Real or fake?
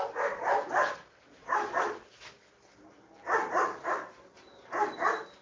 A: fake